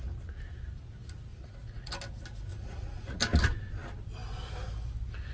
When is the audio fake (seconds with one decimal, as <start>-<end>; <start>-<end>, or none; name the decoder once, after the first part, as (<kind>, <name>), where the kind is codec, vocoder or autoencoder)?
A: 1.3-1.9 (vocoder, Vocos); 2.5-3.2